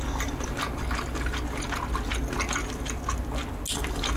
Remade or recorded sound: recorded